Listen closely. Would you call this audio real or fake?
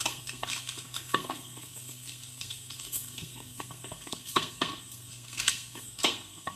fake